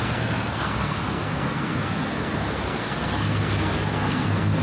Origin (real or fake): fake